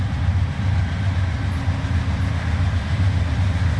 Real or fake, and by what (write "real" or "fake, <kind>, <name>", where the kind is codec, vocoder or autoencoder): real